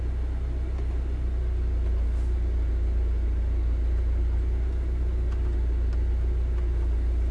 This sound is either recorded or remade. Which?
recorded